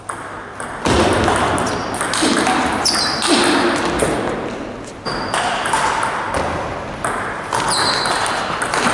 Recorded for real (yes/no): yes